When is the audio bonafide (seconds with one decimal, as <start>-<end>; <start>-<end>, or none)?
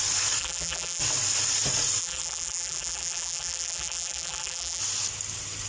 0.0-0.4; 1.0-2.0; 4.8-5.7